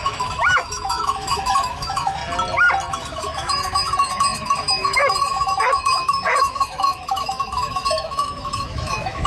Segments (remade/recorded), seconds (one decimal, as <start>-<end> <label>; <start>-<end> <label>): 0.0-2.2 remade; 2.2-2.9 recorded; 2.9-9.3 remade